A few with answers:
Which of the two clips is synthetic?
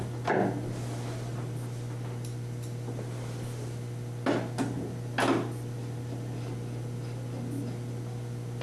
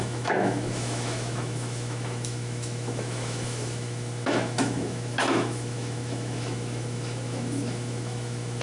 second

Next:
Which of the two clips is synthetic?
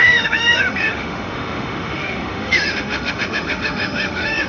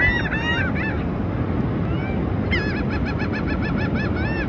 first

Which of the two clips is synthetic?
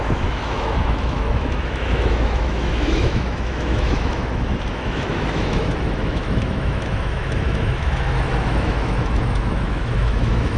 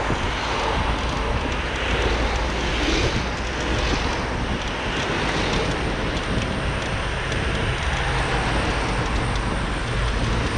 first